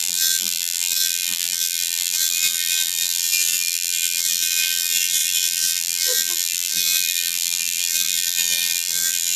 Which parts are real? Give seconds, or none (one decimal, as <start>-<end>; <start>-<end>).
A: none